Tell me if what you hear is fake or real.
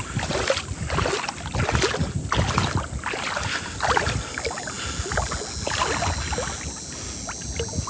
real